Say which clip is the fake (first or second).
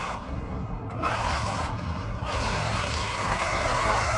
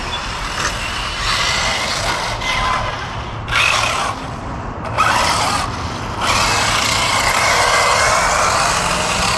first